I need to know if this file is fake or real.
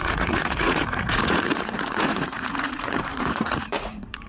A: fake